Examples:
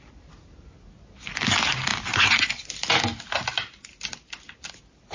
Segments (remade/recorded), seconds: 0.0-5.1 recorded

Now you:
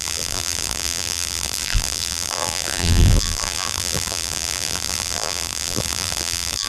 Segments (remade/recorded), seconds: 0.0-6.7 remade

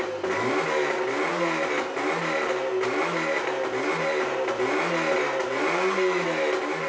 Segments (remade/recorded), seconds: 0.0-6.9 recorded

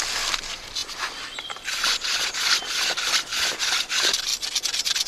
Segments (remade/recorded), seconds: 0.0-4.3 recorded; 4.3-5.1 remade